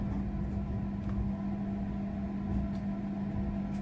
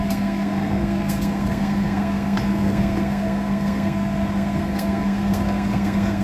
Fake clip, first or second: second